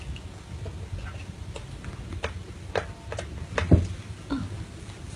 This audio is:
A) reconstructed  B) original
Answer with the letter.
B